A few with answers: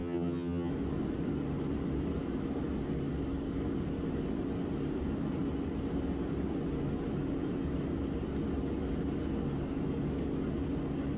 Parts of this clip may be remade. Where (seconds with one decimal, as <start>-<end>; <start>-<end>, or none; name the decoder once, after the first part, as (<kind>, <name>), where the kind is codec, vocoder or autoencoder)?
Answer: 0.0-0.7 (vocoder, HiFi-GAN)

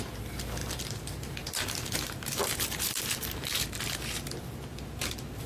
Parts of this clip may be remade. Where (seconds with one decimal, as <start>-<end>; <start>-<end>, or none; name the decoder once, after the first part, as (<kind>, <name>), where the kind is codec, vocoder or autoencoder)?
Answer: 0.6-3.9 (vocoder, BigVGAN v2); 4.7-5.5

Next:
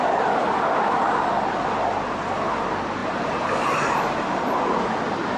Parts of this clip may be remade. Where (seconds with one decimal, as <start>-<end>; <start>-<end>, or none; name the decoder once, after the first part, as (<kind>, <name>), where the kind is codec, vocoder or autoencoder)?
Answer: 3.0-4.5 (vocoder, BigVGAN v2)